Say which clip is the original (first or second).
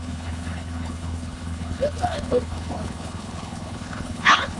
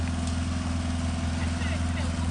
second